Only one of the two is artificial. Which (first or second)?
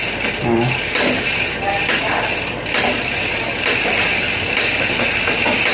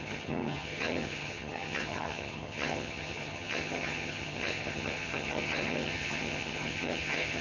second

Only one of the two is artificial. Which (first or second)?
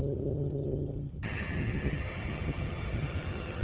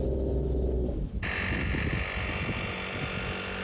first